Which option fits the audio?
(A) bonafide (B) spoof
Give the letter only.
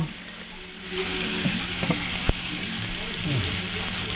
A